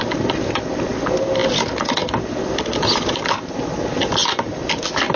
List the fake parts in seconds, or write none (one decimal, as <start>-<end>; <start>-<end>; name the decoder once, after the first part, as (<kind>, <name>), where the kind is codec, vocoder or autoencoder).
none